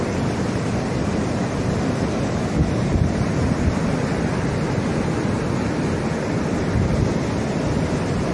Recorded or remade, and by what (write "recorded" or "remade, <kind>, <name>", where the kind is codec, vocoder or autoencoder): recorded